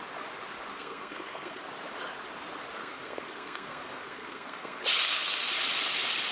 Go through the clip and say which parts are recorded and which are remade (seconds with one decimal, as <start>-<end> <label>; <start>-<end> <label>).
0.0-0.7 recorded; 0.7-1.6 remade; 1.6-2.8 recorded; 2.8-4.8 remade; 4.8-6.3 recorded